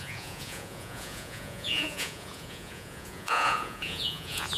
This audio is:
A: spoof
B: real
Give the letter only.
A